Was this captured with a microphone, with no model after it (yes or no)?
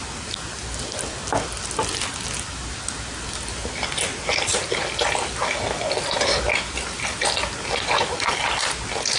yes